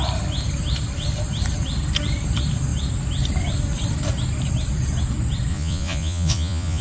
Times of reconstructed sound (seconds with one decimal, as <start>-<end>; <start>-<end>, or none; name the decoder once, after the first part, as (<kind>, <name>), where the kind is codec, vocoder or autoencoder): 5.5-6.8 (vocoder, Vocos)